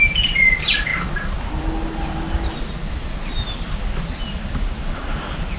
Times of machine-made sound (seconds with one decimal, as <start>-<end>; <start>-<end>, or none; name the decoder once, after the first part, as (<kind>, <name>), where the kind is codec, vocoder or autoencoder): none